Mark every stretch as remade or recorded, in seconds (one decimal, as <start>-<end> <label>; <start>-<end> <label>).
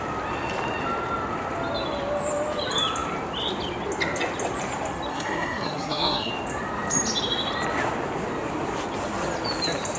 0.0-5.1 recorded; 5.1-6.3 remade; 6.3-10.0 recorded